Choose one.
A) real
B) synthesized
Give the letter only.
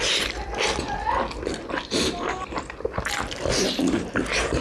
A